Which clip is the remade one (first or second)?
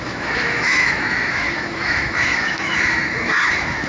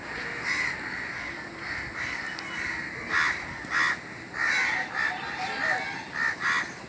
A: first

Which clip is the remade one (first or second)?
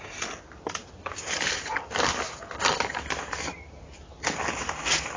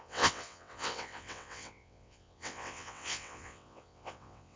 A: second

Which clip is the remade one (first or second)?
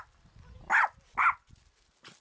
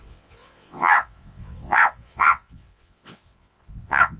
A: second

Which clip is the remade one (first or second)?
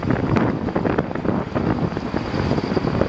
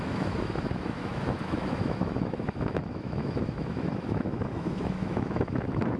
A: second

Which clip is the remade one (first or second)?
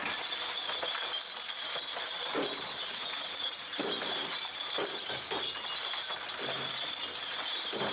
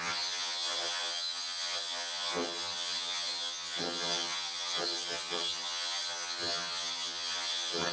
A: second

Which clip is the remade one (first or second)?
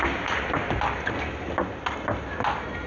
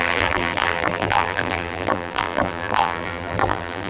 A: second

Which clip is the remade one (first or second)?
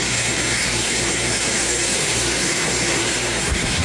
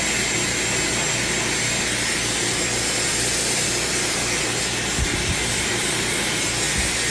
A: first